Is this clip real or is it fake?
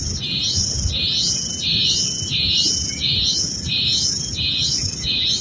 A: real